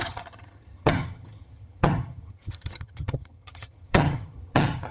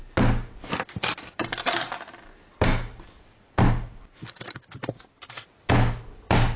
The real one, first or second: second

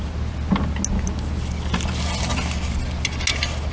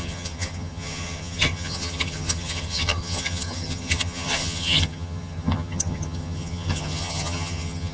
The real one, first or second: first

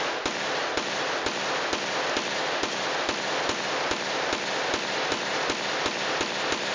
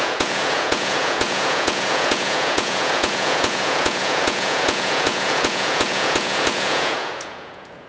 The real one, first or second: first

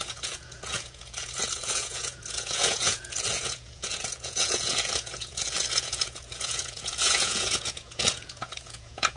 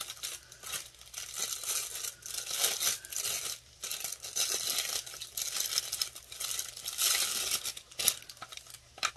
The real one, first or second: second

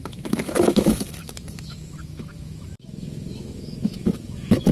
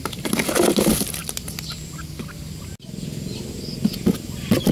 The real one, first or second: second